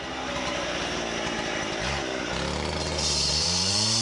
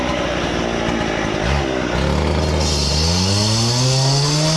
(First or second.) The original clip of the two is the second